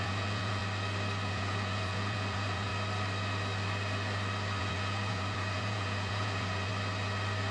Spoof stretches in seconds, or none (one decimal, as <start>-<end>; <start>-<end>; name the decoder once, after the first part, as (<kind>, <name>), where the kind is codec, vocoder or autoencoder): 0.0-0.6 (vocoder, Vocos); 1.3-2.7; 4.6-6.7

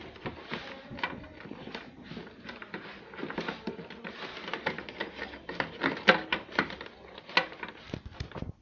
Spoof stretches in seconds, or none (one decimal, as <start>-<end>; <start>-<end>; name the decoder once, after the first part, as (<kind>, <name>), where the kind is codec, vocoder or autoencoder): none

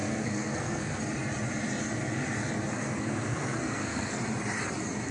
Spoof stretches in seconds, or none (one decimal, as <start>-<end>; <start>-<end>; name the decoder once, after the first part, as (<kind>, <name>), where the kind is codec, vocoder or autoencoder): 0.0-1.0 (codec, SNAC); 2.7-4.2